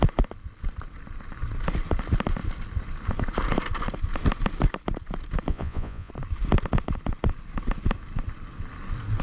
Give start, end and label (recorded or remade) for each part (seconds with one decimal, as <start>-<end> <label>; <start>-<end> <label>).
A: 0.0-5.5 recorded; 5.5-6.1 remade; 6.1-9.2 recorded